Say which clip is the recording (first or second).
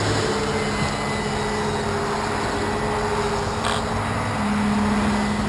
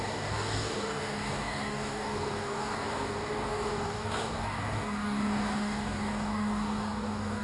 first